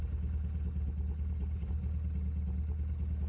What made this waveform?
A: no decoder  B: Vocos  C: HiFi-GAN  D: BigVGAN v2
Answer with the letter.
A